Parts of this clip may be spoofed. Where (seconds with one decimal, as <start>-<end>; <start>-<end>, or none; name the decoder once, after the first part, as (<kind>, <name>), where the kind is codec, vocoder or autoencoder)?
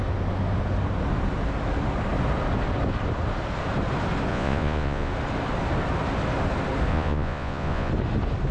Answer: 4.3-5.1 (vocoder, Vocos); 6.9-7.9